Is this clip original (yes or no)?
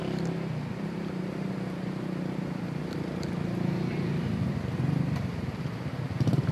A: yes